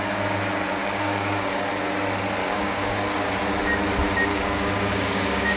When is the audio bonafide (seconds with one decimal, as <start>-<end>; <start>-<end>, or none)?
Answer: 0.0-0.8; 1.7-2.4; 2.9-4.3